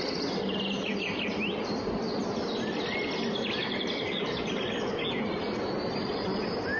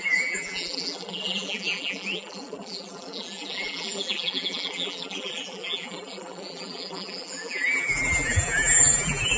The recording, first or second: first